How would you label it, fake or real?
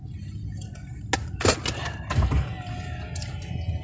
real